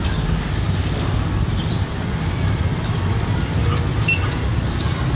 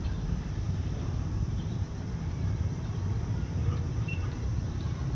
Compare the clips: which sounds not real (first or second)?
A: second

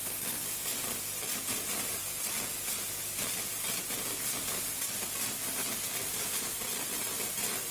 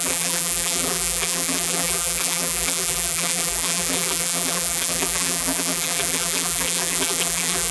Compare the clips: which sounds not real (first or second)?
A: second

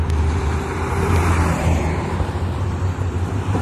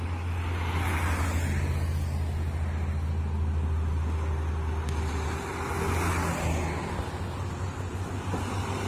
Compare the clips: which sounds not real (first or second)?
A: first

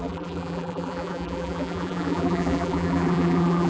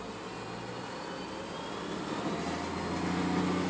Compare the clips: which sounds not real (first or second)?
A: first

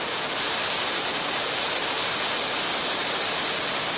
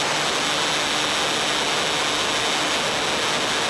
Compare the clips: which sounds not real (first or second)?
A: first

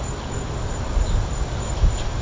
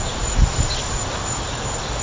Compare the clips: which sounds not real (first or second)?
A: first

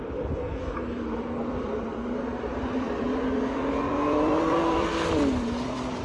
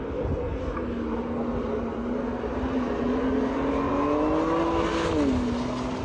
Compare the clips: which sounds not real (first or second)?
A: first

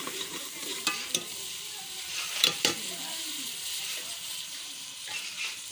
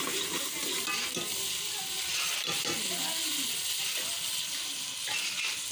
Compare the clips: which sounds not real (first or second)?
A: first